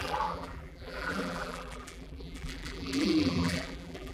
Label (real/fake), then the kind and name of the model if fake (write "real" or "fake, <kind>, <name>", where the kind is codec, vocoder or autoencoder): fake, vocoder, BigVGAN v2